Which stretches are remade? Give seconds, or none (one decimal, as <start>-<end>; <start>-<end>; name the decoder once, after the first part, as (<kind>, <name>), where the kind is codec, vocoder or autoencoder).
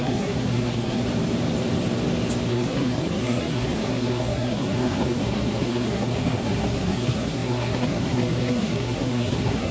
0.0-1.0 (codec, SNAC); 2.5-9.7